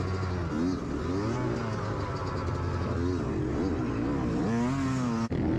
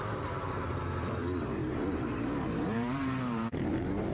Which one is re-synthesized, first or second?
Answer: second